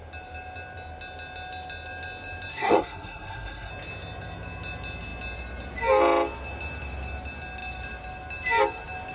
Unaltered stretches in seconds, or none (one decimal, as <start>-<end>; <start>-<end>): 0.0-2.5; 3.7-9.1